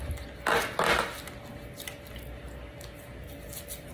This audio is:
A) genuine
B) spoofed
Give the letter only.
A